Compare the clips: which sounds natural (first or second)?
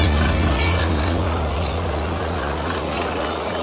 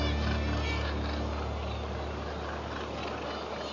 second